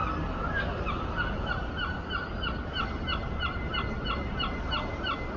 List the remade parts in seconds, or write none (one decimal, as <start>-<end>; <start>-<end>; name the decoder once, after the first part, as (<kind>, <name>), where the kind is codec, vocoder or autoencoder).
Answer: none